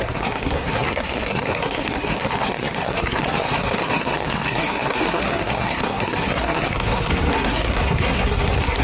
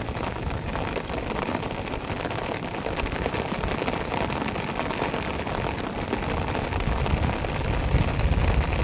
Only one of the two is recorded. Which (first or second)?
second